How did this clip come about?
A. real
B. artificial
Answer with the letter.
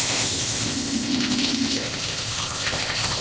B